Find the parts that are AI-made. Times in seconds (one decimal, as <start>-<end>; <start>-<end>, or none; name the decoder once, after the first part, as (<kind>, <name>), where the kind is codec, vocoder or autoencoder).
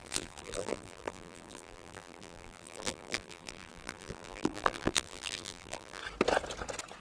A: 0.0-6.0 (vocoder, BigVGAN v2)